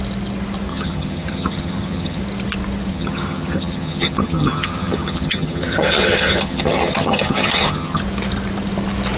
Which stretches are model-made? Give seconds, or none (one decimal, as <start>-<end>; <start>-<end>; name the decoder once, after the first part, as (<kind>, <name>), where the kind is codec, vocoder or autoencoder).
0.7-2.2 (vocoder, HiFi-GAN); 2.9-8.0